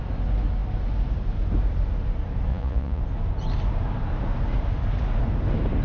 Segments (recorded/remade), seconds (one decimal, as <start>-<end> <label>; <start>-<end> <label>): 0.0-2.5 recorded; 2.5-3.0 remade; 3.0-5.8 recorded